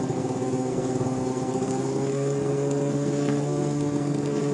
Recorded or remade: remade